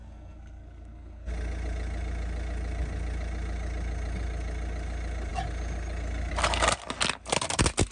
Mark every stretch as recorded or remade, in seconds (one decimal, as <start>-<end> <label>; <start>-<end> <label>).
0.0-1.3 remade; 1.3-7.9 recorded